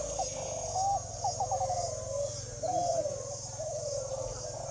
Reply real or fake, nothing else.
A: real